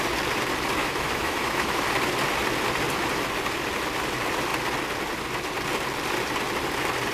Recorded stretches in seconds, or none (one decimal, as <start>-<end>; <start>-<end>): 0.0-0.8; 1.8-7.1